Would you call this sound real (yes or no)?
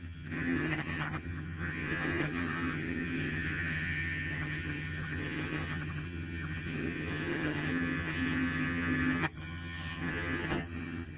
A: no